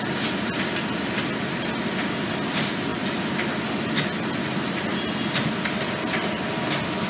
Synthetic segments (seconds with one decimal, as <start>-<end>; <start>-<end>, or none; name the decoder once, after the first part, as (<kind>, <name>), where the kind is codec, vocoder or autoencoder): none